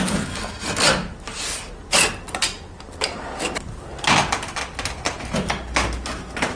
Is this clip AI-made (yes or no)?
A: no